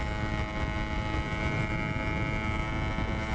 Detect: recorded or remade recorded